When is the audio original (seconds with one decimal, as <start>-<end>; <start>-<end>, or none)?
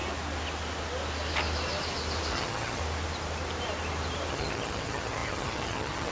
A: 0.0-2.3; 2.8-4.3